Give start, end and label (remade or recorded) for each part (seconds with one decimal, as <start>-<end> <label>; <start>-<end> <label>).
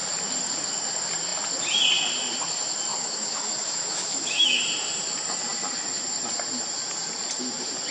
0.0-2.9 recorded; 2.9-4.6 remade; 4.6-7.9 recorded